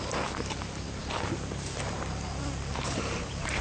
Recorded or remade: recorded